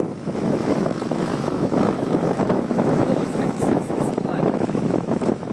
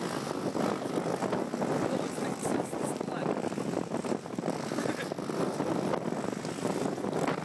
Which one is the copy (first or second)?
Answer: first